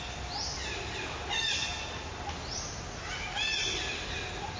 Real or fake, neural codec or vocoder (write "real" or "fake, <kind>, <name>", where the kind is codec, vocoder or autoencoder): real